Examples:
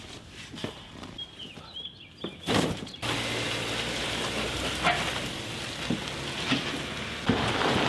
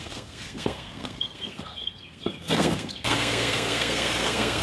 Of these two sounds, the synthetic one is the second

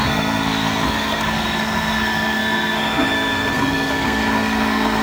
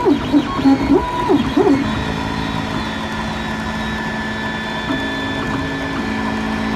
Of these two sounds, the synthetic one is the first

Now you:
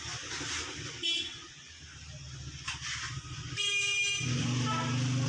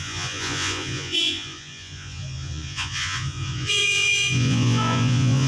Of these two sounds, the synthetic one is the second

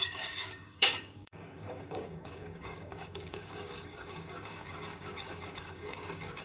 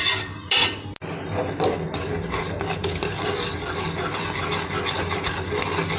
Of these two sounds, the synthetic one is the first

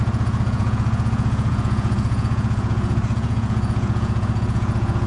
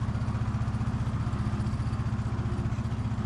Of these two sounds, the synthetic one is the first